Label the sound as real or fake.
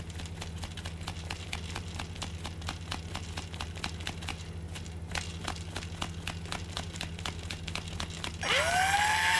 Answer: real